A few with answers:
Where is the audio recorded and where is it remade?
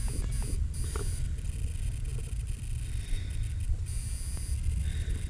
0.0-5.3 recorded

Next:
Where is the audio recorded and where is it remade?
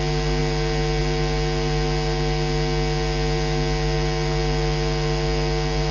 0.0-5.9 recorded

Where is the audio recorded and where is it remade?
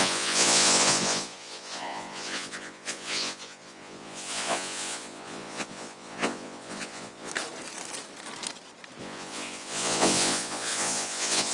0.0-7.3 remade; 7.3-9.0 recorded; 9.0-11.5 remade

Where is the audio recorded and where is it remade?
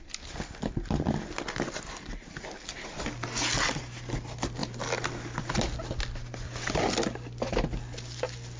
0.0-8.6 recorded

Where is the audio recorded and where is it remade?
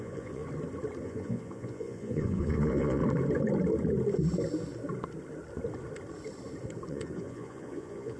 0.0-0.4 remade; 0.4-1.0 recorded; 1.0-3.0 remade; 3.0-6.9 recorded; 6.9-8.2 remade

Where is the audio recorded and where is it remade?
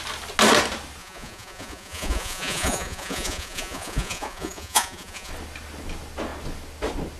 0.0-1.0 recorded; 1.0-5.3 remade; 5.3-7.2 recorded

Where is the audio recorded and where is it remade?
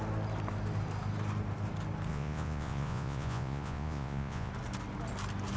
0.0-2.1 recorded; 2.1-4.5 remade; 4.5-5.6 recorded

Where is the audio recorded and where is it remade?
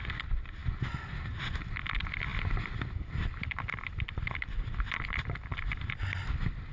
0.0-6.7 recorded